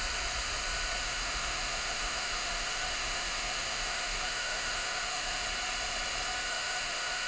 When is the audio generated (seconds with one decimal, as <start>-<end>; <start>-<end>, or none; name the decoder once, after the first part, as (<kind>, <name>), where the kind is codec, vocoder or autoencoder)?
1.0-5.4 (autoencoder, DAC-VAE); 6.5-7.3